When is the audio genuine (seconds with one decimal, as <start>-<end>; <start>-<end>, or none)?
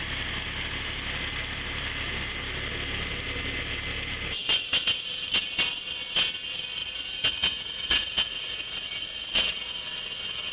0.0-6.8; 9.8-10.5